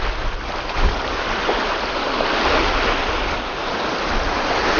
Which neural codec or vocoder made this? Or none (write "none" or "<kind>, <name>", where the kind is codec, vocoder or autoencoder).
none